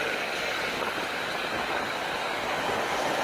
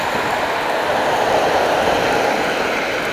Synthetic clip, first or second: first